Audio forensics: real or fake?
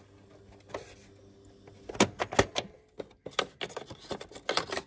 real